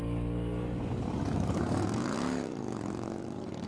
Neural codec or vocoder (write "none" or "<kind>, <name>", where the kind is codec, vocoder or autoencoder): codec, DAC